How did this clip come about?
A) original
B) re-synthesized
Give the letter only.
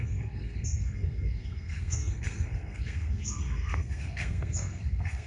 B